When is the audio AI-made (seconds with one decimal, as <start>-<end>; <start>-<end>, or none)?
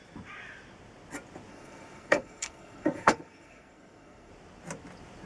1.5-4.3